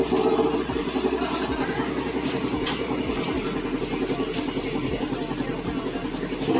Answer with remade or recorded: recorded